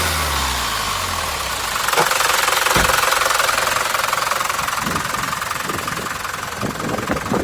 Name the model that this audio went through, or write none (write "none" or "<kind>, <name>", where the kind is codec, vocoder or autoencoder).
none